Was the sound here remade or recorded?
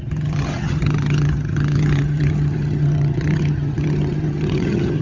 remade